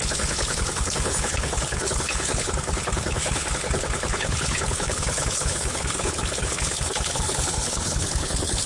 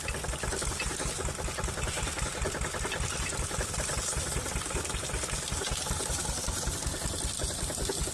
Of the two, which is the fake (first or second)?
first